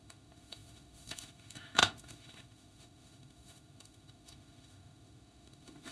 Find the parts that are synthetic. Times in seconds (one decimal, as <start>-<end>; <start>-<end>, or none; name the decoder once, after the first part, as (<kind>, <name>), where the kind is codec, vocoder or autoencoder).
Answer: 0.0-5.9 (autoencoder, DAC-VAE)